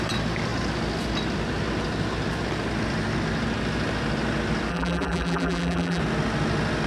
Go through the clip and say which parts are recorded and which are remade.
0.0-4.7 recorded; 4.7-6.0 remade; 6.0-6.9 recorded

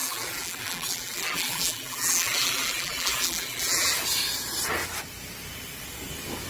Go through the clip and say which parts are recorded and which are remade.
0.0-3.9 remade; 3.9-6.5 recorded

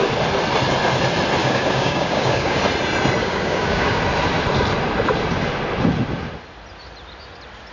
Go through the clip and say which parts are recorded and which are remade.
0.0-1.4 recorded; 1.4-2.6 remade; 2.6-3.2 recorded; 3.2-4.0 remade; 4.0-7.7 recorded